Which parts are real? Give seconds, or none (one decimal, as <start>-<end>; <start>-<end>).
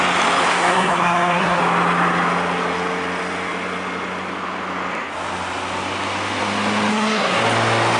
0.0-0.5; 1.6-6.9; 7.4-8.0